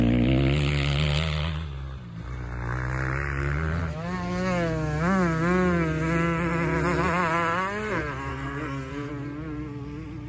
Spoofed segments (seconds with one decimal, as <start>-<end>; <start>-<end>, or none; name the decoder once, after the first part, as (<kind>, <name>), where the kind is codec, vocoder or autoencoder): 8.3-9.1 (codec, SNAC)

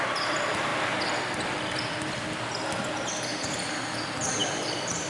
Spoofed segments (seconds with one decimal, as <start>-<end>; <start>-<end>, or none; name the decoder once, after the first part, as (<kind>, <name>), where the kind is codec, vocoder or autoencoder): none

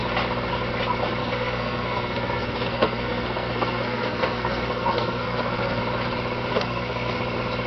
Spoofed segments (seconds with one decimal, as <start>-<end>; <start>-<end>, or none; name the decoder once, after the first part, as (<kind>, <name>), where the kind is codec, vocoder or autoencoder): 1.2-5.8 (codec, SNAC); 6.5-7.2

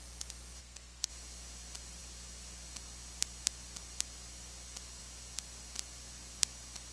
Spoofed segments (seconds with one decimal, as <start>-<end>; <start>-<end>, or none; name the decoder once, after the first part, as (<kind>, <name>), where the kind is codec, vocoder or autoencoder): 0.6-1.1 (codec, SNAC)

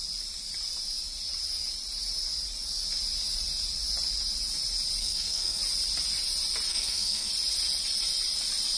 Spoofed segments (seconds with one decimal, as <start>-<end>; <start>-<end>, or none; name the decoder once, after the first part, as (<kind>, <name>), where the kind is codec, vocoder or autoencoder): 5.0-5.6 (codec, SNAC); 6.7-7.3